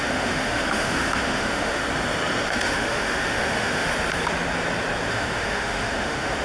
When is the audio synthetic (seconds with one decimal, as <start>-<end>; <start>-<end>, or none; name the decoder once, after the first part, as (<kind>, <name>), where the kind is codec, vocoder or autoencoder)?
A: 0.0-1.8 (autoencoder, DAC-VAE); 2.4-3.9; 5.1-6.4